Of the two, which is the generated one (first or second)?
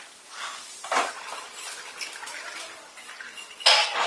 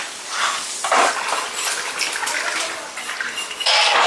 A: first